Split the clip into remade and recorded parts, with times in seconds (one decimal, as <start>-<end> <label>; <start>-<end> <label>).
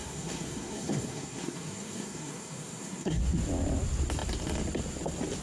0.0-3.2 remade; 3.2-5.4 recorded